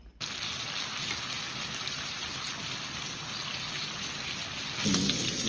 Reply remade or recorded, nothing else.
recorded